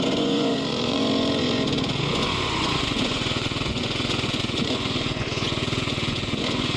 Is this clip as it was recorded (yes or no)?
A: no